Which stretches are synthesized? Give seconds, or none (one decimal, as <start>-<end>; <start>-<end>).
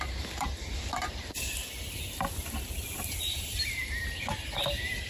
0.0-1.6; 2.9-5.1